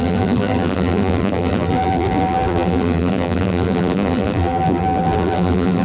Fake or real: fake